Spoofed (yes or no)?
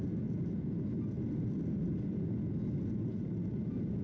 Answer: no